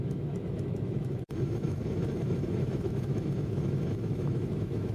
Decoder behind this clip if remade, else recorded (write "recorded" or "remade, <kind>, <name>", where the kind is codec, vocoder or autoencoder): remade, autoencoder, DAC-VAE